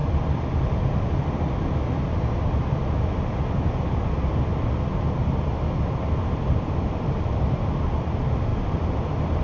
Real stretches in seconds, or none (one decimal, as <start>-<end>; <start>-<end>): 1.7-4.9; 7.3-8.5